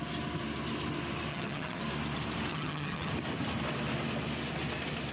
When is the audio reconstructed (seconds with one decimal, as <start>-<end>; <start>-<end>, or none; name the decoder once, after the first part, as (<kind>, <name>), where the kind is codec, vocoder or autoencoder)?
1.3-1.8 (vocoder, HiFi-GAN); 2.5-3.1